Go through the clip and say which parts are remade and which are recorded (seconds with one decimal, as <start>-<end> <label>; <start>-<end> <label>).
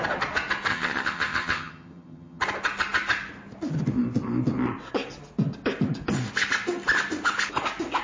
0.0-0.7 recorded; 0.7-2.4 remade; 2.4-8.0 recorded